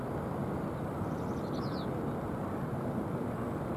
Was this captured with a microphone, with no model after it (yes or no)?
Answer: yes